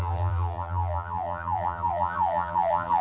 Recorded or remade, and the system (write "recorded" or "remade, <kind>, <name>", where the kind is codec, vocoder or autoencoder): remade, vocoder, BigVGAN v2